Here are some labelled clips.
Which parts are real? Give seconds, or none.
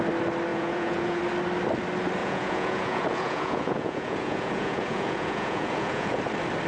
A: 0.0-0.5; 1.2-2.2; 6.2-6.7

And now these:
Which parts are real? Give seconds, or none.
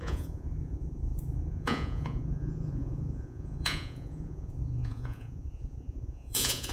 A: none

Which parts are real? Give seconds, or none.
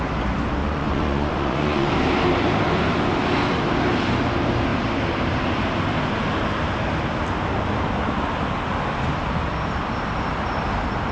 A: 0.0-0.6; 1.9-11.1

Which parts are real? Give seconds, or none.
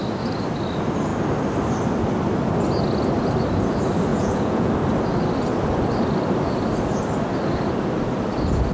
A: 0.0-4.1; 4.7-8.7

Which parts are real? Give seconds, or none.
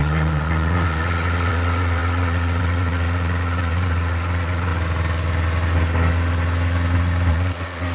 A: 4.7-7.3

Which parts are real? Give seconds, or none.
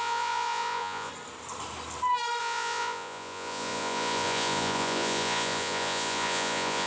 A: 1.1-2.4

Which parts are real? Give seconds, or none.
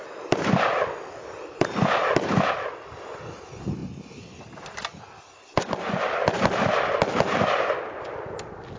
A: 0.0-8.8